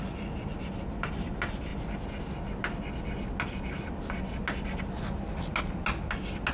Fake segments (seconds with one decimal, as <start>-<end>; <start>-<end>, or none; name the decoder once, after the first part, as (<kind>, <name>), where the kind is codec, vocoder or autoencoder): none